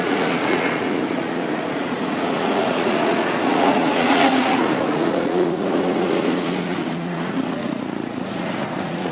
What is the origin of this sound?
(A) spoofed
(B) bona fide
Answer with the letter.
A